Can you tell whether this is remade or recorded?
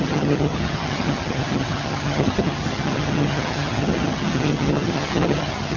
remade